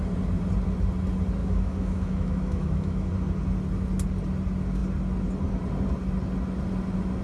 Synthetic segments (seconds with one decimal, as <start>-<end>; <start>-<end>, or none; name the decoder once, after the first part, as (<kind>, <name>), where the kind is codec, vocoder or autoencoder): 1.4-3.1 (autoencoder, DAC-VAE)